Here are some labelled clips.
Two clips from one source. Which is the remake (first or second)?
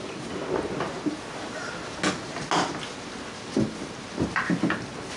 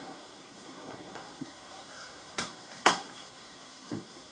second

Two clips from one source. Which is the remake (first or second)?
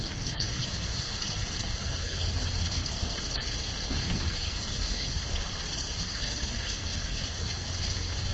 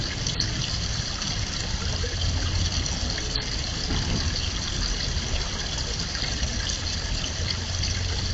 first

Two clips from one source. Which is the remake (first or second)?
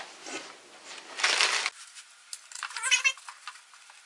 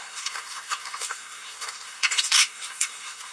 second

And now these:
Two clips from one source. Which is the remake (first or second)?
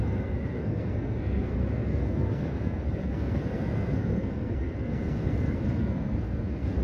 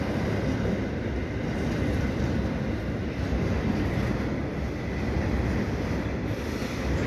first